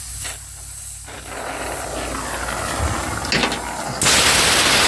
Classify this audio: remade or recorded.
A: recorded